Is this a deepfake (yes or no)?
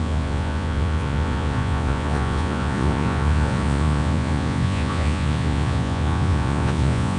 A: yes